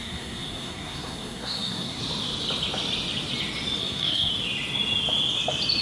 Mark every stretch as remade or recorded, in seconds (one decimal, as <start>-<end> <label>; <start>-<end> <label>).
0.0-2.0 remade; 2.0-3.8 recorded; 3.8-4.3 remade; 4.3-5.8 recorded